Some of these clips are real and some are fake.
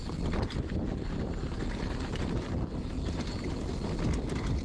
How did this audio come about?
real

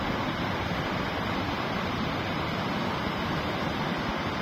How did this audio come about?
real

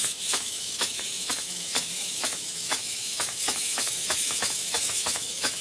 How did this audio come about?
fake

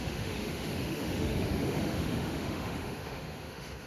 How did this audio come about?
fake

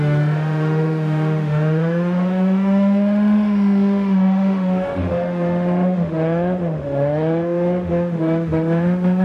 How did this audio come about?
fake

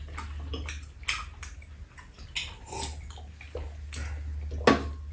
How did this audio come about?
real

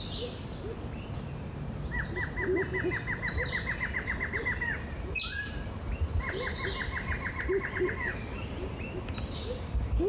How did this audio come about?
real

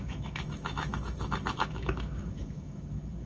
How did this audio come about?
fake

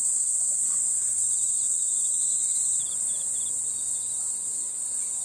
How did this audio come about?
real